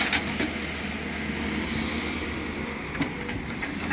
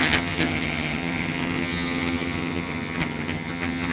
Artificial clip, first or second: second